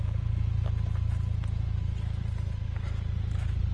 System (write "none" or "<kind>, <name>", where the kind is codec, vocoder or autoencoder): vocoder, BigVGAN v2